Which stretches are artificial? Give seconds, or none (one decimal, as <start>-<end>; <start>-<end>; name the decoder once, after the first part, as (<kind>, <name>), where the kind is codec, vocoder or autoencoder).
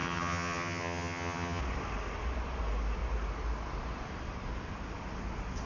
0.0-1.6 (vocoder, HiFi-GAN)